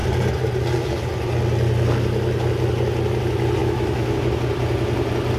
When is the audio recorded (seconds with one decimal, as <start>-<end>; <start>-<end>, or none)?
0.0-3.6; 4.2-5.4